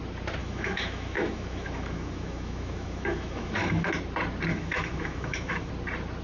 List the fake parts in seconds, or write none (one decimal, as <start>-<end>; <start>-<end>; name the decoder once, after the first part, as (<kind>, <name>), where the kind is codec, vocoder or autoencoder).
0.4-3.9 (autoencoder, DAC-VAE); 4.5-5.7